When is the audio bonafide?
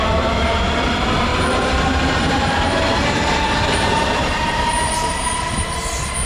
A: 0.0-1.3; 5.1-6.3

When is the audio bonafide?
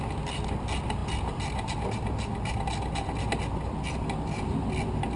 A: 0.0-5.2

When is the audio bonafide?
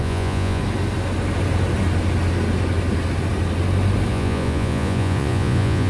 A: 0.6-4.1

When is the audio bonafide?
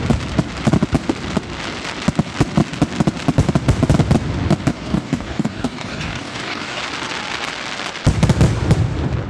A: 0.0-4.7; 6.8-9.3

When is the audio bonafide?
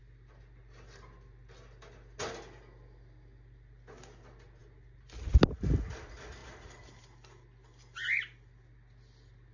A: 0.0-9.5